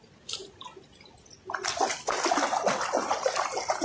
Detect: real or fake real